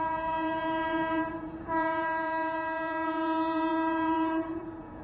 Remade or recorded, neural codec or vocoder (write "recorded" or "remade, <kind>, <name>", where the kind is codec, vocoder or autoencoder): remade, vocoder, Vocos